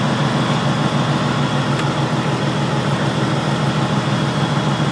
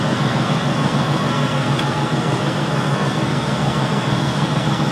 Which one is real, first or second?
first